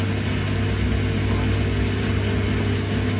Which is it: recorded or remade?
recorded